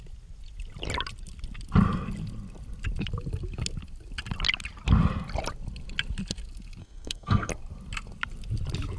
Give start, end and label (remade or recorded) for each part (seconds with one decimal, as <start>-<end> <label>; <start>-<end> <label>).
0.0-6.8 recorded; 6.8-7.5 remade; 7.5-9.0 recorded